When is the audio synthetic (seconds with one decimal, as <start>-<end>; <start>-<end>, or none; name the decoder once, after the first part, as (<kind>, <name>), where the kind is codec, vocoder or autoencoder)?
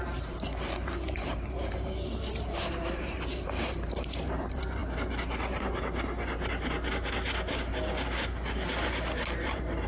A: 0.0-4.8 (vocoder, BigVGAN v2); 9.4-9.9